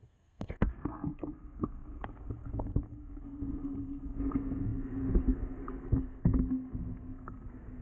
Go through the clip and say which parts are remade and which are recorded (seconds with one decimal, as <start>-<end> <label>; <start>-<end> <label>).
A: 0.0-7.8 remade